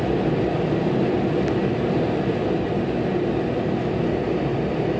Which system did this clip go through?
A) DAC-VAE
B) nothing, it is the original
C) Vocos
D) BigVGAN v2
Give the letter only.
B